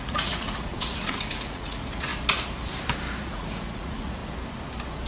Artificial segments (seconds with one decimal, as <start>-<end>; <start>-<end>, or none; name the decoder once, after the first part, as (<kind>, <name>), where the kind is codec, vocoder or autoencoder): 0.0-2.1 (vocoder, Vocos); 3.2-4.2